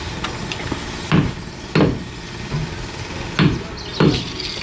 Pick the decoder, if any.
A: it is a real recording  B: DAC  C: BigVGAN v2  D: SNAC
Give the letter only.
A